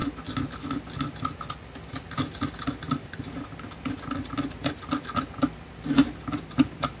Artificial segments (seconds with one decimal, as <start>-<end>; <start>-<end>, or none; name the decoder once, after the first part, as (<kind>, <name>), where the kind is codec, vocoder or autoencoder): none